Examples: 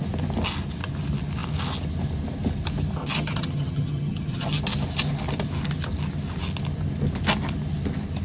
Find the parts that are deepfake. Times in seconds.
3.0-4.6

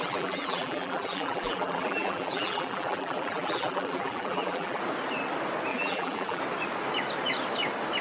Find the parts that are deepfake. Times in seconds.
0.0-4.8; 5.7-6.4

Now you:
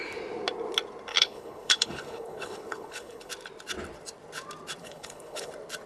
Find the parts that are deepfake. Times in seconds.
1.1-3.3; 4.8-5.5

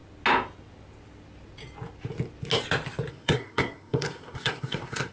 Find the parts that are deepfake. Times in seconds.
3.1-5.1

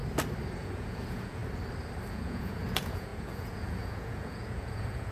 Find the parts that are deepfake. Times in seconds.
0.6-1.4; 2.1-5.1

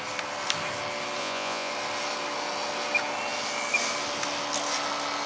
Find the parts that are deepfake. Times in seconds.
1.2-1.7

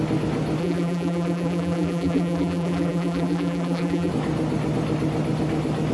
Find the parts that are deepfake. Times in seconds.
0.6-4.1